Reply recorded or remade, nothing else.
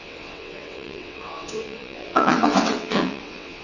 remade